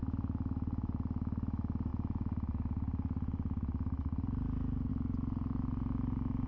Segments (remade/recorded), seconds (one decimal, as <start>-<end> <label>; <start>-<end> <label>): 0.0-6.5 recorded